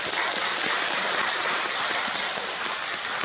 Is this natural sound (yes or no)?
yes